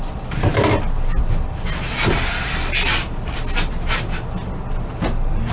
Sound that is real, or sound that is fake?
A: real